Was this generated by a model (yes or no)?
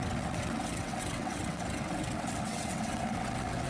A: yes